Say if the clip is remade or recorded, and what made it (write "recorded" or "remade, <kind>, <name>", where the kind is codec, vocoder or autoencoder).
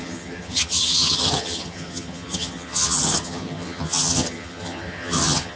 remade, vocoder, HiFi-GAN